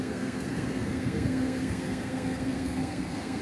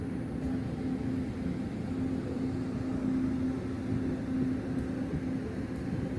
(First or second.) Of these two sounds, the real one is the second